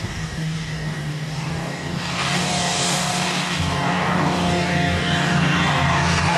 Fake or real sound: fake